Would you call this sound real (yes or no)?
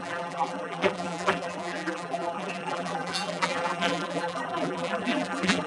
no